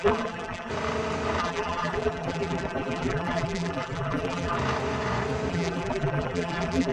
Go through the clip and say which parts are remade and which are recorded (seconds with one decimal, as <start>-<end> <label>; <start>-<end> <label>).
0.0-0.7 remade; 0.7-1.4 recorded; 1.4-4.6 remade; 4.6-5.5 recorded; 5.5-6.9 remade